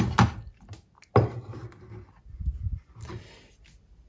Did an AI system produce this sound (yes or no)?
no